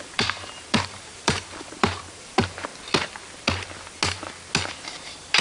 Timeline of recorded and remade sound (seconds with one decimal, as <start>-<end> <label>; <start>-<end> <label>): 0.0-2.7 remade; 2.7-4.7 recorded; 4.7-5.4 remade

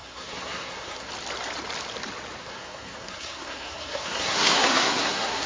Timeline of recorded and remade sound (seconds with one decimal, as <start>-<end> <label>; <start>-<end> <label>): 0.0-1.1 remade; 1.1-2.4 recorded; 2.4-5.5 remade